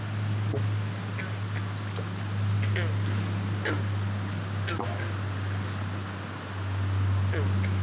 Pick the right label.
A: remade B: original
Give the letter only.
B